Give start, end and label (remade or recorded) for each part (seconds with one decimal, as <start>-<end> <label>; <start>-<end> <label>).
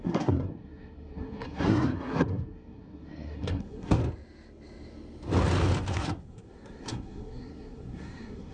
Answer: 0.0-4.0 remade; 4.0-5.9 recorded; 5.9-8.5 remade